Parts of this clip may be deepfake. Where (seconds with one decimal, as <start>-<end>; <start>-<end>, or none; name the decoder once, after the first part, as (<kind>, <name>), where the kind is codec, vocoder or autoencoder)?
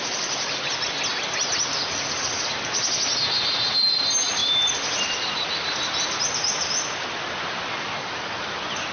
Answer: none